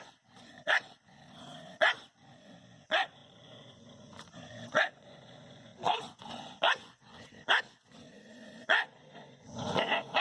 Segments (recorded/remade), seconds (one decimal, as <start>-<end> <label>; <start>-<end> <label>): 0.0-10.2 remade